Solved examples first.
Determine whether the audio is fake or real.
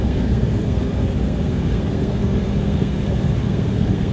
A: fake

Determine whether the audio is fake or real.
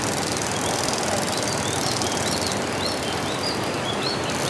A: fake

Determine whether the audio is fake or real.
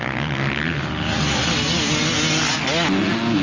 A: real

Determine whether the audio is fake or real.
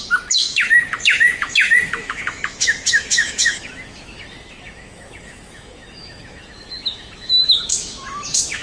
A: fake